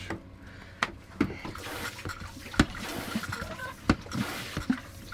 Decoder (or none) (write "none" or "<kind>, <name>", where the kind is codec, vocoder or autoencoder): none